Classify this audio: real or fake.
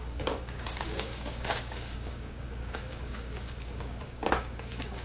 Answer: fake